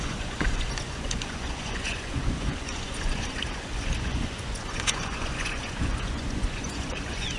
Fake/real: fake